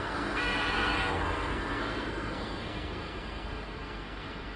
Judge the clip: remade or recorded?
remade